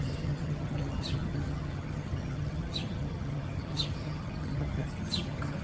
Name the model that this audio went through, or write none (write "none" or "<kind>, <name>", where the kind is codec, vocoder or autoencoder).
vocoder, HiFi-GAN